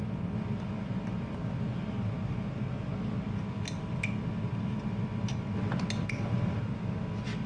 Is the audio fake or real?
real